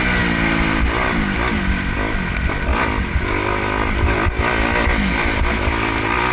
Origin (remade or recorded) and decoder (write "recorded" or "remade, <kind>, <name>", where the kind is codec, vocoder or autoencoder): recorded